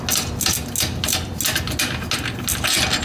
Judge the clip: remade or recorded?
recorded